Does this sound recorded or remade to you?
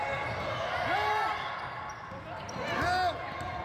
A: recorded